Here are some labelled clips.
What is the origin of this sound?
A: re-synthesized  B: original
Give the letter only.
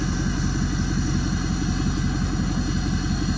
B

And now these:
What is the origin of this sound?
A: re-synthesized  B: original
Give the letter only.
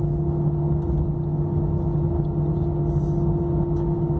B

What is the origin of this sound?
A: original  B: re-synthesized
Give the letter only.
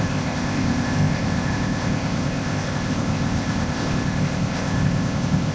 B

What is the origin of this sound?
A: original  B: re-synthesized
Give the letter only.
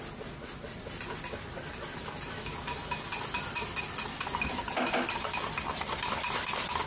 A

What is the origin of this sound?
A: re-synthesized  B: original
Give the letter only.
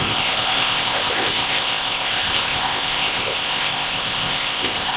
A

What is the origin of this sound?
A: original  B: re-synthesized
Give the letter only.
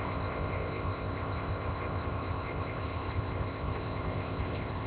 B